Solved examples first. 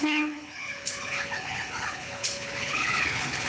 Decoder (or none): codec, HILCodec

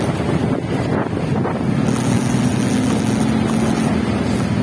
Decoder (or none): none